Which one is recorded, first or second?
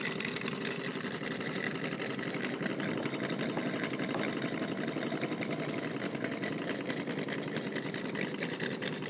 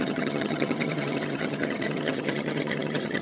first